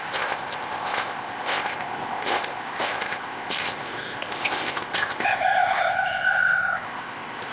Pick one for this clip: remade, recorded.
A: remade